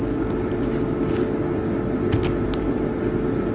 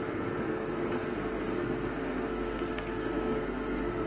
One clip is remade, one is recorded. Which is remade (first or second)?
second